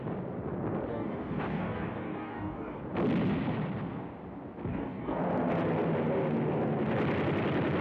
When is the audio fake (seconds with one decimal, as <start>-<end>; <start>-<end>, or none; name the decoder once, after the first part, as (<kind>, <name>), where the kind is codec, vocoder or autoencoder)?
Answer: 0.9-2.8 (codec, DAC); 4.7-5.2